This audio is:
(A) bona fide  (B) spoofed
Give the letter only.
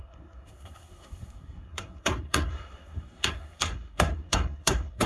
B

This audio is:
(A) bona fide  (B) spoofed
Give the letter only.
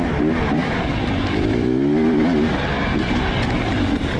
A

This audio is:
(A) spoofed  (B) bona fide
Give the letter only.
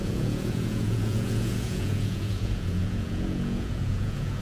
A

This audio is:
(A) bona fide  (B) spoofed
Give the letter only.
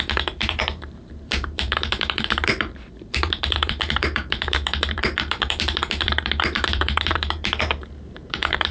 B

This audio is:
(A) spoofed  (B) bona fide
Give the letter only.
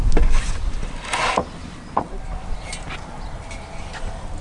B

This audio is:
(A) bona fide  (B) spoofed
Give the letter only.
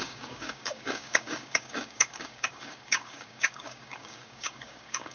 B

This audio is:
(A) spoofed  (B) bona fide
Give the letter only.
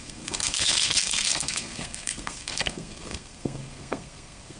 A